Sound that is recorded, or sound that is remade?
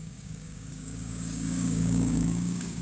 remade